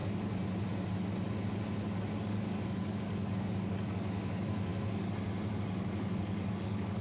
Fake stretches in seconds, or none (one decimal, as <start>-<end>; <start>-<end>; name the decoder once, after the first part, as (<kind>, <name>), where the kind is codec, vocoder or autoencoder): 2.2-4.7 (codec, DAC); 5.5-7.0